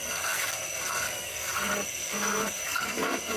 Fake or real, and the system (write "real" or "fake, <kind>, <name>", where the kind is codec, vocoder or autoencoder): fake, codec, SNAC